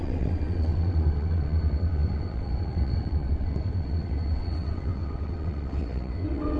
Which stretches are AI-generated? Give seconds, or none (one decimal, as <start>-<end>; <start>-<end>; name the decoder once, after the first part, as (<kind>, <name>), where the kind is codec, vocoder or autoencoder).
0.0-6.6 (vocoder, WaveNeXt)